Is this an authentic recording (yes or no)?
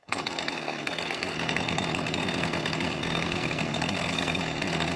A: no